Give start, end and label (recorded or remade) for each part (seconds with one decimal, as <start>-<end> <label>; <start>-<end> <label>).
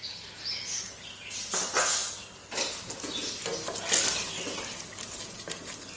0.0-6.0 recorded